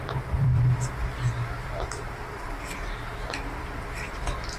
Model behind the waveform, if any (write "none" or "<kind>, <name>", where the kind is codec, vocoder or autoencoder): vocoder, BigVGAN v2